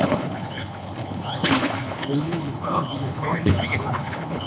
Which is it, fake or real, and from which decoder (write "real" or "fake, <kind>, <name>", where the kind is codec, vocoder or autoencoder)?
fake, codec, HILCodec